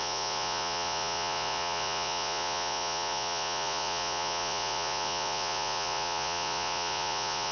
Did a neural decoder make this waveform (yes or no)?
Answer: yes